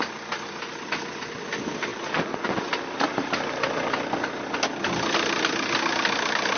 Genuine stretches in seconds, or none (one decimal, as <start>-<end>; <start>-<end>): 0.0-6.6